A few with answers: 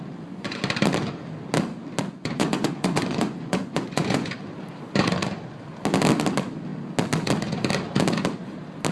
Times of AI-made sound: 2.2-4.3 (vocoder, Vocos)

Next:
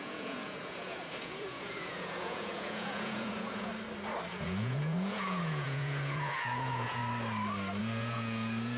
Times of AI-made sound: 0.0-3.7 (vocoder, Vocos); 4.3-7.0; 7.8-8.8

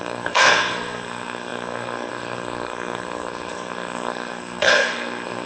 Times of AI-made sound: 0.0-5.5 (codec, SNAC)

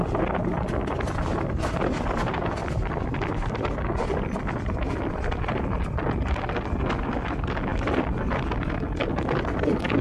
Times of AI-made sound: none

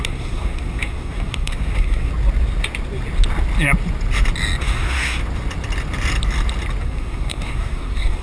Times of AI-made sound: 0.0-2.1 (codec, SNAC); 4.6-5.2; 6.8-8.2

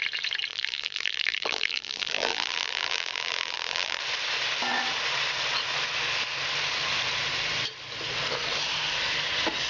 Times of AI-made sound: 0.5-4.0 (vocoder, BigVGAN v2)

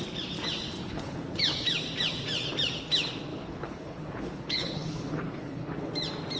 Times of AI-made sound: 0.8-1.4 (codec, HILCodec); 3.3-5.9